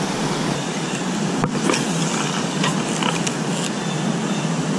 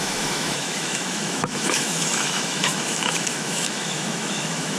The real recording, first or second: first